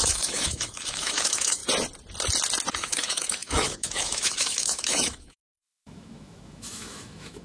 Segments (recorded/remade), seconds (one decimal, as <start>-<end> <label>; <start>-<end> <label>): 0.0-1.6 remade; 1.6-2.7 recorded; 2.7-7.4 remade